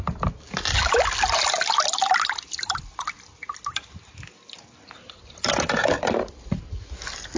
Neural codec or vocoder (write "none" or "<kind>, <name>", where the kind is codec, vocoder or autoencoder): none